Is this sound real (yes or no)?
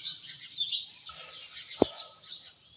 yes